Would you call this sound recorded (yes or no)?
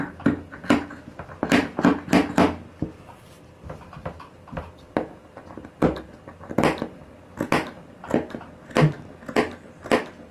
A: yes